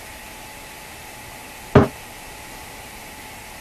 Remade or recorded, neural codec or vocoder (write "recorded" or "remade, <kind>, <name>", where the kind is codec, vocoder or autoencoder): recorded